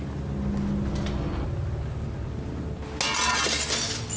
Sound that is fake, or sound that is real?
real